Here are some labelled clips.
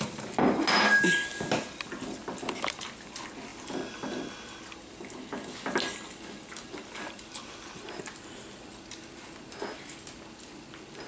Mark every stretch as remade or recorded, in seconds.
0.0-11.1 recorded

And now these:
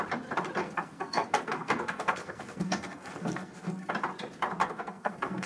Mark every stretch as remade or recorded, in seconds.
0.0-0.6 recorded; 0.6-3.9 remade; 3.9-4.6 recorded; 4.6-5.5 remade